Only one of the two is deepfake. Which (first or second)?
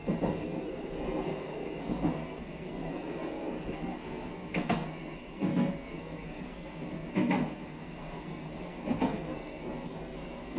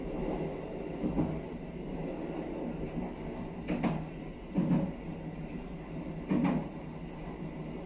first